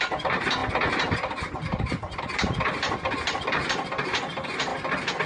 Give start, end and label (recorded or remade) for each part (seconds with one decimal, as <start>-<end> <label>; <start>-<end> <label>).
0.0-4.7 remade; 4.7-5.3 recorded